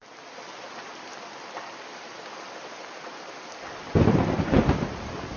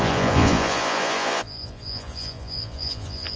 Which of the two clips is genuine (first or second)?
first